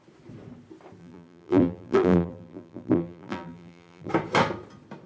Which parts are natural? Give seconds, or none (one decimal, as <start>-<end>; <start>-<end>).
0.0-1.0; 4.1-5.1